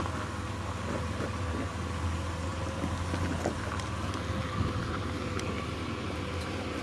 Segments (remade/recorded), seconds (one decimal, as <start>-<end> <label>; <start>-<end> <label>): 0.0-6.8 recorded